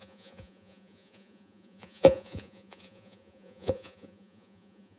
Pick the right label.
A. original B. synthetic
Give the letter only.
B